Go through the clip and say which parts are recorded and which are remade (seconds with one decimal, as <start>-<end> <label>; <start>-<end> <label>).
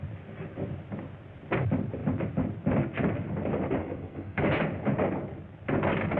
0.0-3.8 recorded; 3.8-4.4 remade; 4.4-6.2 recorded